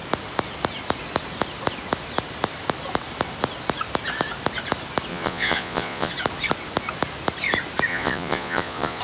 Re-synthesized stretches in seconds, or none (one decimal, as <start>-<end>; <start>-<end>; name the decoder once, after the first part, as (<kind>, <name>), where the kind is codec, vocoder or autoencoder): 5.1-6.1 (vocoder, Vocos); 7.9-9.0